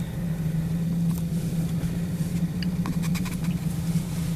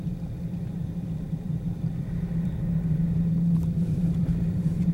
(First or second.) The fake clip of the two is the second